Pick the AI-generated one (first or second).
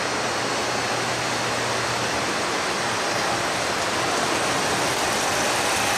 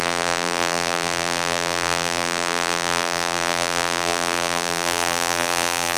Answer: second